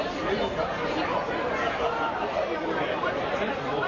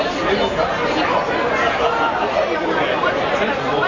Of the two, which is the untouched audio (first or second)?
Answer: second